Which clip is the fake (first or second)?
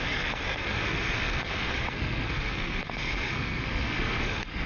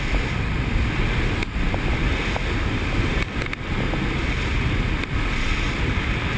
first